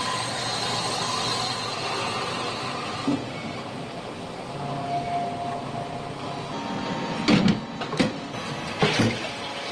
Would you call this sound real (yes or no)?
yes